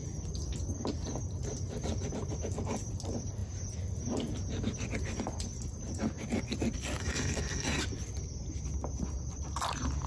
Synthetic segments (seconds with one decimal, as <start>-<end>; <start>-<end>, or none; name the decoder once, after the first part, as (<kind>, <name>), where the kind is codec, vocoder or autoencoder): 7.0-7.8 (codec, SNAC)